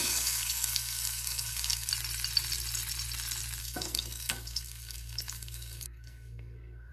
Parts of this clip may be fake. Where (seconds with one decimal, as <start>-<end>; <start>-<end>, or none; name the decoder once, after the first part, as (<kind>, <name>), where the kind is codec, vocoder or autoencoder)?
0.0-1.9 (codec, SNAC); 3.6-6.9